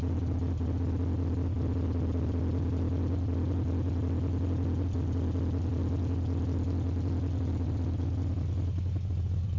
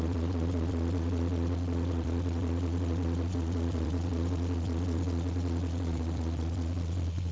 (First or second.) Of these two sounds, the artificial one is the second